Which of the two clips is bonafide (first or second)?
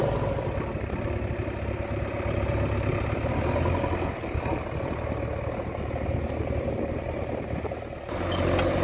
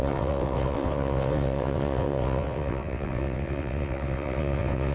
first